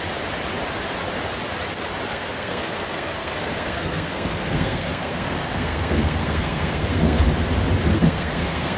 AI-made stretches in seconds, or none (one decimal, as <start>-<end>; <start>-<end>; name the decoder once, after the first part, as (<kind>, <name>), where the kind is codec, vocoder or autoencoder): 2.1-7.2 (codec, SNAC); 7.9-8.8